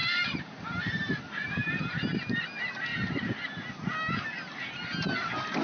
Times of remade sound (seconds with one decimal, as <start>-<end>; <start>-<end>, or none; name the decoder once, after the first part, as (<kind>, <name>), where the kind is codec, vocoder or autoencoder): 0.0-1.8 (vocoder, BigVGAN v2)